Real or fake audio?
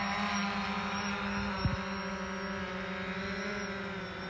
real